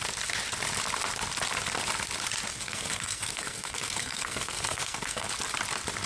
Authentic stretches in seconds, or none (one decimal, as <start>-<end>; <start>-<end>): 0.0-2.5; 5.3-6.1